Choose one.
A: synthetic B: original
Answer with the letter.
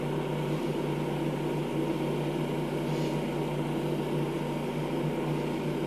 B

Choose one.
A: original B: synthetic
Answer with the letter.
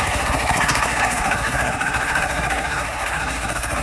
B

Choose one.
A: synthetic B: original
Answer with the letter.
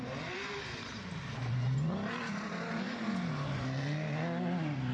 B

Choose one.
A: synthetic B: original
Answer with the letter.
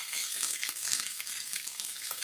A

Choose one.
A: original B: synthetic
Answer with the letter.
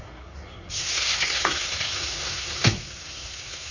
B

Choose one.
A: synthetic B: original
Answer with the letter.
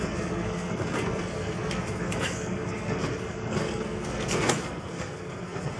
A